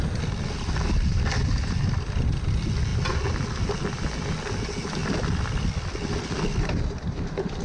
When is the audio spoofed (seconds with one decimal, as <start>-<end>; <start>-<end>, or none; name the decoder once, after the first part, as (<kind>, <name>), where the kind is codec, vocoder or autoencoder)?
none